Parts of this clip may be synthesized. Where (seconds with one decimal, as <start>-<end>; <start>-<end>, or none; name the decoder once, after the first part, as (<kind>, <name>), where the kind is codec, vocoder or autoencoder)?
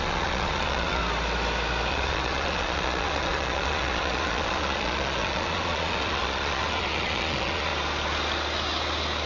0.0-1.0 (vocoder, Vocos); 1.9-7.7